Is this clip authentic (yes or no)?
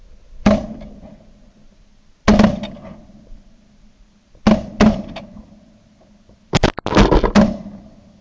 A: yes